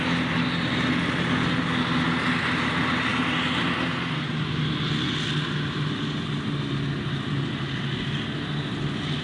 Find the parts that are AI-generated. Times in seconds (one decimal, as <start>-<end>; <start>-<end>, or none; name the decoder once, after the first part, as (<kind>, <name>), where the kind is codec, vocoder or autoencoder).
none